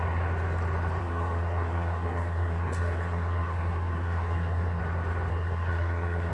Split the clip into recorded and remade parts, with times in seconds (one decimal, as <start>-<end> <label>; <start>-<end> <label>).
0.0-1.0 recorded; 1.0-4.8 remade; 4.8-5.3 recorded; 5.3-6.3 remade